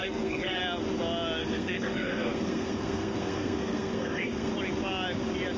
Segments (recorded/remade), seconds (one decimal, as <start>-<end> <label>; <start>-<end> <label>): 0.0-0.6 remade; 0.6-1.4 recorded; 1.4-4.5 remade; 4.5-5.6 recorded